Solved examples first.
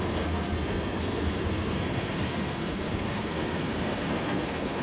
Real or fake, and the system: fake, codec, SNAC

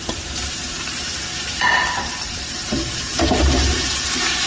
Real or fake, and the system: fake, vocoder, BigVGAN v2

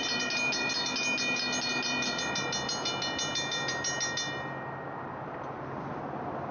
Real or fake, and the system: real